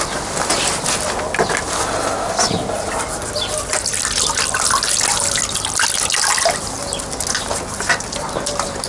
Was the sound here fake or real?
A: real